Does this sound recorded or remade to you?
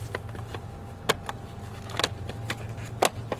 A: recorded